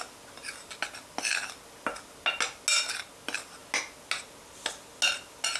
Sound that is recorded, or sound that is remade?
recorded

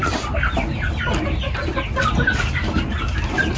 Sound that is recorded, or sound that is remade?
recorded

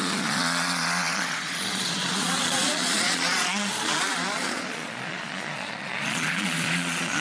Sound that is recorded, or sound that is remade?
remade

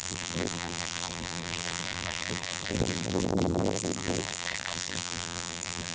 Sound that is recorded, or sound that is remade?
remade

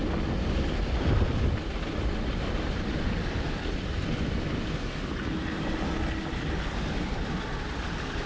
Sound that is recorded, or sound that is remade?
recorded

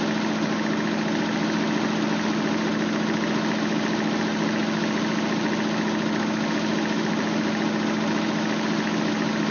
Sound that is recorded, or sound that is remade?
recorded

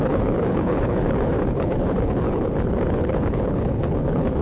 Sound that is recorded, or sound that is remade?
remade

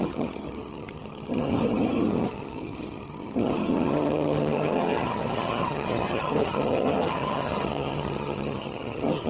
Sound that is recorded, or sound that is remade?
remade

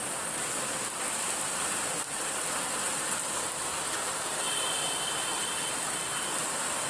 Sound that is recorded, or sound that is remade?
recorded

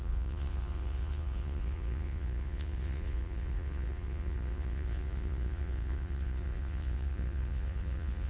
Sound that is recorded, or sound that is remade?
remade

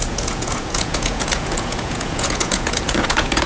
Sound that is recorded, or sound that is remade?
remade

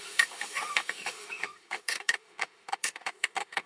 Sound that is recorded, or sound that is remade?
remade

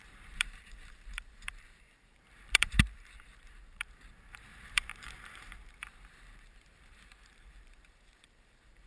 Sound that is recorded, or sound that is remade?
remade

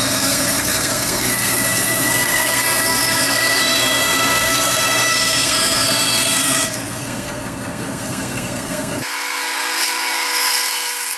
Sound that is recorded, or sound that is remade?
remade